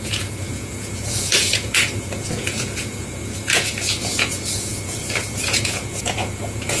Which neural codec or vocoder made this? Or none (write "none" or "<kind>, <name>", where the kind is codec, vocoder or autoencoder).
vocoder, Vocos